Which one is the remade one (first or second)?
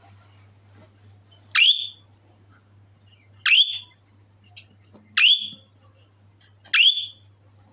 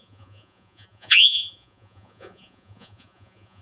second